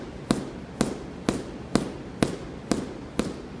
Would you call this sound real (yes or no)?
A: yes